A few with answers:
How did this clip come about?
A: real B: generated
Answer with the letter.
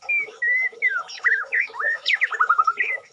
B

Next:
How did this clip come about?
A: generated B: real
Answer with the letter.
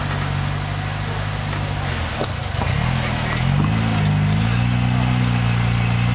B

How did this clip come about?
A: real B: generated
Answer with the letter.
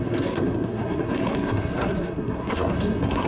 B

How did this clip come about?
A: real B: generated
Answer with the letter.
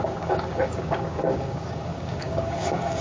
B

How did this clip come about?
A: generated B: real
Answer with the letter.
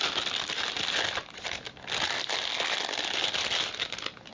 B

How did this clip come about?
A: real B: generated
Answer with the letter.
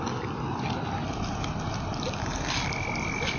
A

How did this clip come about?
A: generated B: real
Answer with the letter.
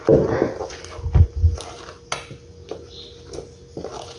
B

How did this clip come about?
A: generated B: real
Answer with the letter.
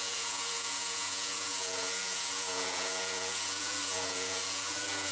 A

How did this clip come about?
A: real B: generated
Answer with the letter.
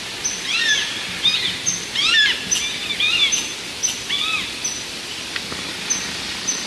A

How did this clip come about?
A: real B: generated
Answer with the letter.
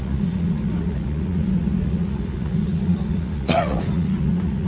B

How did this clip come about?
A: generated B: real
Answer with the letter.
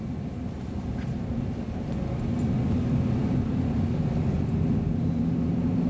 B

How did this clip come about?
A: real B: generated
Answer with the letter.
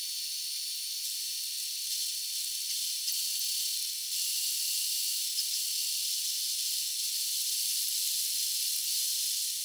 A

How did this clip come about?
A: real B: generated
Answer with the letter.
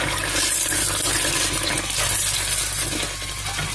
A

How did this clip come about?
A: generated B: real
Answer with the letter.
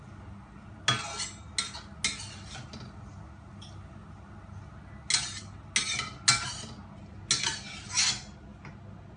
B